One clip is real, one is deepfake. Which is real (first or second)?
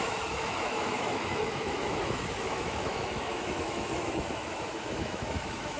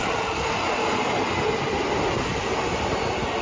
second